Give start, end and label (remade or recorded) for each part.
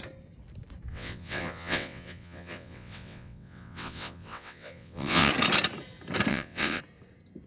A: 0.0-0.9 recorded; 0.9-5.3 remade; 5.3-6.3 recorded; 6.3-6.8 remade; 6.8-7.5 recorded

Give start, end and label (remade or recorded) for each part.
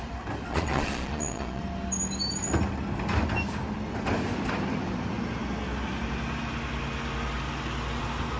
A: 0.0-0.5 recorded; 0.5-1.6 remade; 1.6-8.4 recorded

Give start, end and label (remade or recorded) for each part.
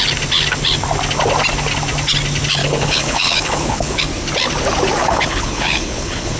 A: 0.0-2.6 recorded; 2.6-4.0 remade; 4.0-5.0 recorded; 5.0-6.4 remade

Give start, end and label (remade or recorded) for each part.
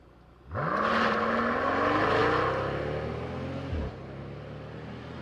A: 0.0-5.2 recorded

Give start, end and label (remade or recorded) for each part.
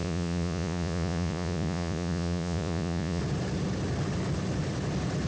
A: 0.0-3.2 remade; 3.2-5.3 recorded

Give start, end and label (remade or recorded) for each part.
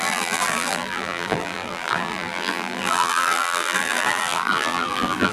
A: 0.0-5.3 remade